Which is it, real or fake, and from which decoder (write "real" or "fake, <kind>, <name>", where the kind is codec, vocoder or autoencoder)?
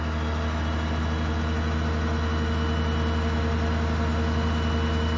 real